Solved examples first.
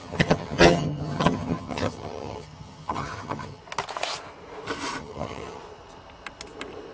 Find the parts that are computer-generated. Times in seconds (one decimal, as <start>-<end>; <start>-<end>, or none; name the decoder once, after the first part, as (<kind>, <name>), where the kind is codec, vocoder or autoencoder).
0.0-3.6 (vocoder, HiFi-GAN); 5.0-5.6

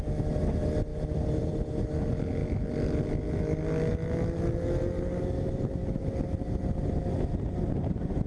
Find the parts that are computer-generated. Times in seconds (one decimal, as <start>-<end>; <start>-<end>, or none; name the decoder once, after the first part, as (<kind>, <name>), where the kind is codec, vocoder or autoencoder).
none

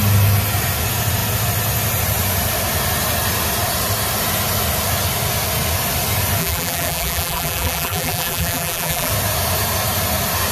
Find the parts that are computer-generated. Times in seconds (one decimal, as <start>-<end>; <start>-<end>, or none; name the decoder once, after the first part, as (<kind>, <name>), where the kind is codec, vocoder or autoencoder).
6.4-9.1 (vocoder, BigVGAN v2)

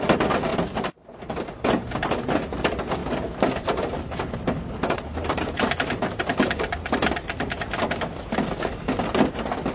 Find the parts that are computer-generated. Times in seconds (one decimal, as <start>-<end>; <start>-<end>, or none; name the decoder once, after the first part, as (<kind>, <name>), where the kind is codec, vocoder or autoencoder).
3.0-7.8 (vocoder, BigVGAN v2)